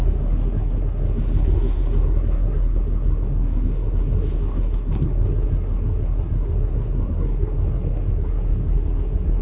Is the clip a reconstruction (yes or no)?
yes